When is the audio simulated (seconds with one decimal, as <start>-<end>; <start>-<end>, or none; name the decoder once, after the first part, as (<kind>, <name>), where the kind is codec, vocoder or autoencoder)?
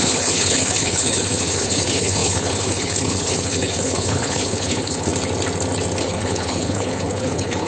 0.0-5.1 (codec, HILCodec); 6.0-7.7